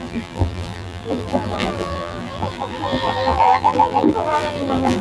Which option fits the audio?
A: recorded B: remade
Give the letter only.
B